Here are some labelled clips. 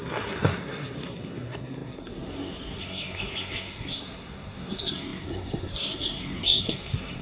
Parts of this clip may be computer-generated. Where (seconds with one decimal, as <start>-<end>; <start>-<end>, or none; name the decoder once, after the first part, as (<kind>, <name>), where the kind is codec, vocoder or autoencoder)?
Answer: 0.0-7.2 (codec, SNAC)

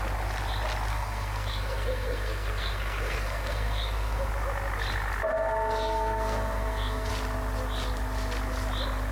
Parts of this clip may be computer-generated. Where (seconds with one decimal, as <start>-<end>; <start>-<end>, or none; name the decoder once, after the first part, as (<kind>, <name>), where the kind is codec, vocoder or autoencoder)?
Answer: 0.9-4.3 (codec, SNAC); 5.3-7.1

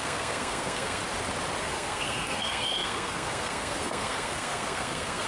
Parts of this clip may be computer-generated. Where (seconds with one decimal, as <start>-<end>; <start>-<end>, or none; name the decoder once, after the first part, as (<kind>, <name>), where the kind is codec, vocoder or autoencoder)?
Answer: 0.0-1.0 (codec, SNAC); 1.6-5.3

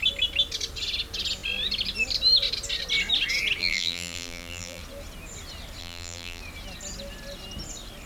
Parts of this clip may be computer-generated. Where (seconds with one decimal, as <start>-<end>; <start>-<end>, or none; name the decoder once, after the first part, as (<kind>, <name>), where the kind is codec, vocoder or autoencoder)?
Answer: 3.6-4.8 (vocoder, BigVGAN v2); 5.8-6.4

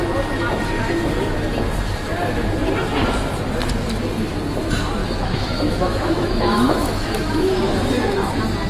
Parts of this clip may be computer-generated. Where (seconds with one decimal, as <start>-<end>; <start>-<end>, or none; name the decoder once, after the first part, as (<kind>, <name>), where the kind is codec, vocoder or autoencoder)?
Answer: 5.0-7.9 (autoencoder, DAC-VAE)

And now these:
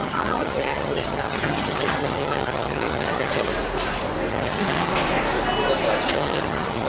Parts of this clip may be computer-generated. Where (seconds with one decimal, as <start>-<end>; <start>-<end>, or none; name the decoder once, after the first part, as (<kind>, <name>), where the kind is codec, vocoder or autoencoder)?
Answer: 0.0-3.5 (vocoder, HiFi-GAN); 4.3-4.9; 6.1-6.9